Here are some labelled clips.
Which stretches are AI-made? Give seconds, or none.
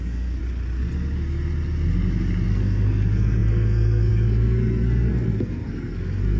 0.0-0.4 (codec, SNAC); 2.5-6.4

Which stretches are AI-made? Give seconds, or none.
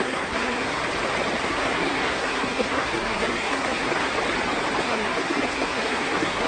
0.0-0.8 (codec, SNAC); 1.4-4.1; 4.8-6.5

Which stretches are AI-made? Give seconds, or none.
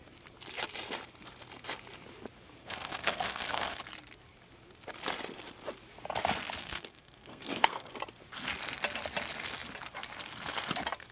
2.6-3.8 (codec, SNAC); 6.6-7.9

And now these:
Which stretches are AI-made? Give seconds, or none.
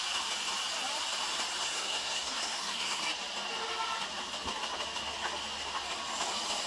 1.6-3.0 (codec, SNAC)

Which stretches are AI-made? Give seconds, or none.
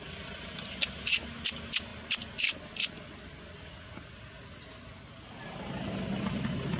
none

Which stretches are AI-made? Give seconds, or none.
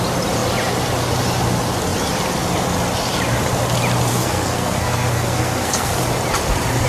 4.1-6.0 (codec, SNAC)